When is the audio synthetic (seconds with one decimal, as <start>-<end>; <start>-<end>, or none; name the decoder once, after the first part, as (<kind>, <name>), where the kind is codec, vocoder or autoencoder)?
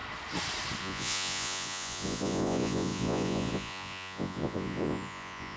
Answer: 0.8-5.6 (vocoder, Vocos)